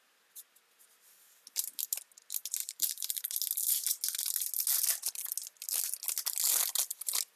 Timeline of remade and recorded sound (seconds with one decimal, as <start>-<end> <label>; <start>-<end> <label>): 0.0-2.6 recorded; 2.6-3.2 remade; 3.2-7.4 recorded